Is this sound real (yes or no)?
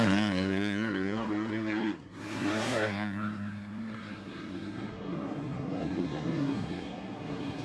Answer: no